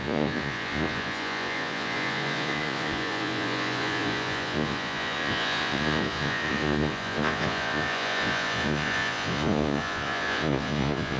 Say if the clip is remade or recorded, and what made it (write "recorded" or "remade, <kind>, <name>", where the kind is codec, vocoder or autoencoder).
remade, vocoder, Vocos